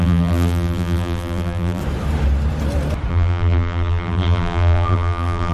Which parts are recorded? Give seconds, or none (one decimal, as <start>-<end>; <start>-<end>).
1.8-3.1